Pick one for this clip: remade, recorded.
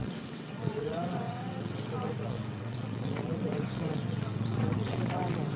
remade